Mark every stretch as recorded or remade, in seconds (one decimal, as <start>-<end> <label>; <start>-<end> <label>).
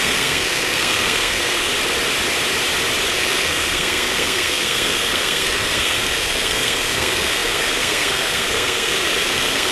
0.0-1.7 remade; 1.7-3.1 recorded; 3.1-9.7 remade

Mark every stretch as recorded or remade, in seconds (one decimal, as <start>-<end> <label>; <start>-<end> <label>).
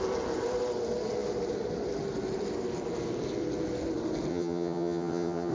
0.0-4.3 recorded; 4.3-5.5 remade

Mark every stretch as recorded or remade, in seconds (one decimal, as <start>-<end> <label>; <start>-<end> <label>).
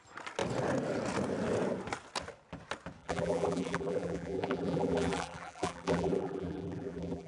0.0-3.0 recorded; 3.0-7.3 remade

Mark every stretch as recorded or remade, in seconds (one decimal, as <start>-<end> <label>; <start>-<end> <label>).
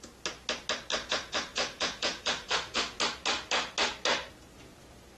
0.0-0.9 recorded; 0.9-3.0 remade; 3.0-5.2 recorded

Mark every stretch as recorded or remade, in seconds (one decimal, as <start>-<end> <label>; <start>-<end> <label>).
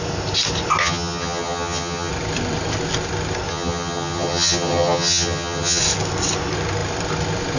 0.0-0.8 recorded; 0.8-2.1 remade; 2.1-3.5 recorded; 3.5-5.8 remade; 5.8-7.6 recorded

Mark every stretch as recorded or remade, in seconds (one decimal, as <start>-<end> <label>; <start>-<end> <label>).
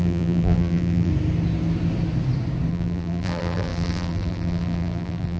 0.0-1.1 remade; 1.1-2.7 recorded; 2.7-5.4 remade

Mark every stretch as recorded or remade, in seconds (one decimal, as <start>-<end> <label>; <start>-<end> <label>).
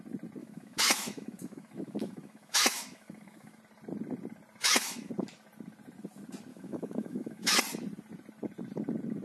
0.0-0.4 recorded; 0.4-3.6 remade; 3.6-4.6 recorded; 4.6-5.1 remade; 5.1-6.5 recorded; 6.5-7.6 remade; 7.6-9.2 recorded